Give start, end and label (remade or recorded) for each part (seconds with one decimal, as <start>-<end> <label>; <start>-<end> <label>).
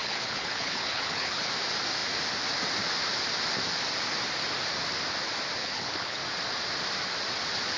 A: 0.0-1.5 remade; 1.5-5.6 recorded; 5.6-6.2 remade; 6.2-7.8 recorded